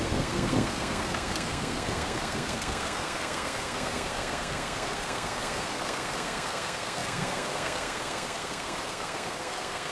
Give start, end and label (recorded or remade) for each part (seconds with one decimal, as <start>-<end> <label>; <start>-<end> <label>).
0.0-9.9 remade

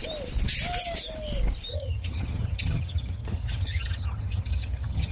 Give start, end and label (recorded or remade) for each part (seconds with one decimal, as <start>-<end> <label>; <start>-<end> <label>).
0.0-1.7 recorded; 1.7-5.1 remade

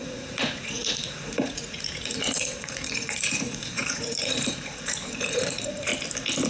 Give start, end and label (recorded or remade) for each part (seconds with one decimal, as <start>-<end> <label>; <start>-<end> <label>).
0.0-5.9 remade; 5.9-6.5 recorded

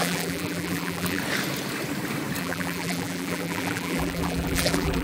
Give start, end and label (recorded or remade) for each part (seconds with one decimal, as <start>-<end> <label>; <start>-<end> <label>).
0.0-1.2 remade; 1.2-2.4 recorded; 2.4-5.0 remade